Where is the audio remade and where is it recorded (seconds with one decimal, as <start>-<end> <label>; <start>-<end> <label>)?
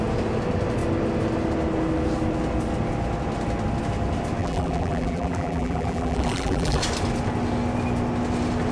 0.0-4.4 recorded; 4.4-6.8 remade; 6.8-8.7 recorded